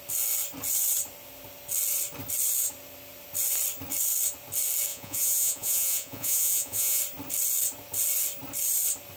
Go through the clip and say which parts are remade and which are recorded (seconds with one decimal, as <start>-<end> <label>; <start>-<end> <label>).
0.0-4.9 recorded; 4.9-7.0 remade; 7.0-9.2 recorded